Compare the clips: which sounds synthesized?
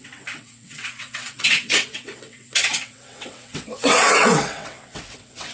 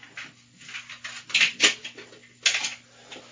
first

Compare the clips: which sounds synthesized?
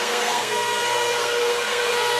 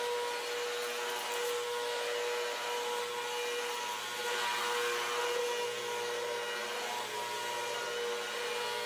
first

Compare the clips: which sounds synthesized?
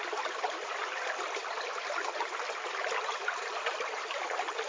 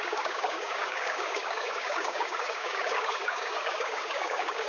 second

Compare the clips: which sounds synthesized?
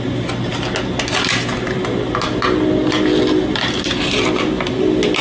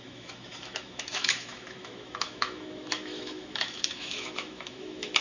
second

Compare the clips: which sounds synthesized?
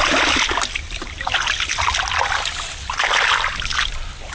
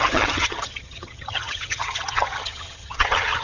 second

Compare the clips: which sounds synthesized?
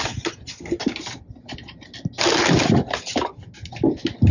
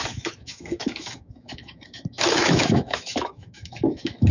second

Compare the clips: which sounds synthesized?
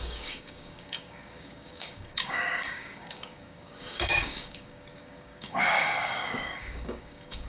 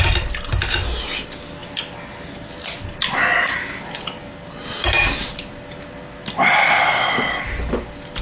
first